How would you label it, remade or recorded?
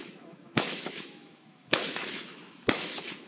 remade